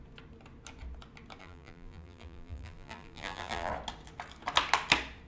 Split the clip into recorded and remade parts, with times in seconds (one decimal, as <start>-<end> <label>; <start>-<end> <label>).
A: 0.0-1.4 recorded; 1.4-3.7 remade; 3.7-5.3 recorded